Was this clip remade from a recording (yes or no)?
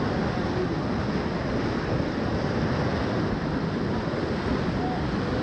no